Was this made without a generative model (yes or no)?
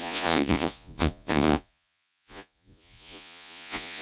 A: no